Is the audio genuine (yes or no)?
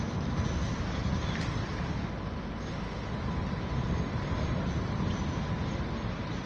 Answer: yes